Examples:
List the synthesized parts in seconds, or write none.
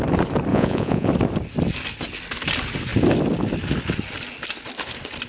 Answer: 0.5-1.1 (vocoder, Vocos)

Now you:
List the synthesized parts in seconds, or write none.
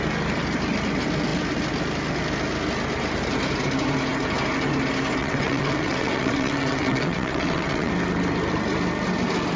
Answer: 5.2-7.9 (vocoder, WaveNeXt)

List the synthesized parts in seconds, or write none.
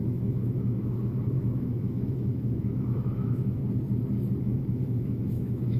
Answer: 0.0-3.6 (autoencoder, DAC-VAE); 4.4-5.8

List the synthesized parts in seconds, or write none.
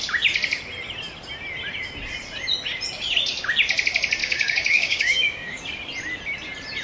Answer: 4.2-5.6 (codec, DAC)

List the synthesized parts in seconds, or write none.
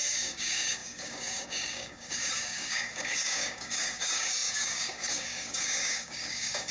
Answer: 0.0-6.7 (codec, DAC)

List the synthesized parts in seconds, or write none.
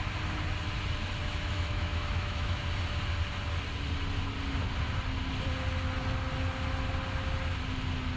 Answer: 1.2-2.6 (autoencoder, DAC-VAE)